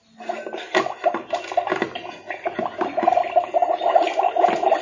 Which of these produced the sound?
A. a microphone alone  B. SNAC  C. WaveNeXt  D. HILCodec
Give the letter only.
A